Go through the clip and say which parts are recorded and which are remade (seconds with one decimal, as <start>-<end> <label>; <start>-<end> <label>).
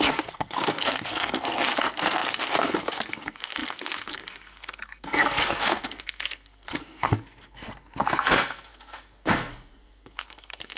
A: 0.0-10.8 remade